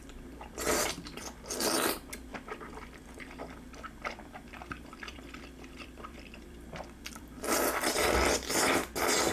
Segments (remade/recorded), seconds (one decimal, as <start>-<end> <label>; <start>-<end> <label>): 0.0-9.3 remade